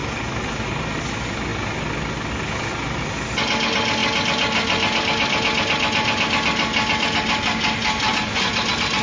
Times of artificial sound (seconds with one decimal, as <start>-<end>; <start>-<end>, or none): none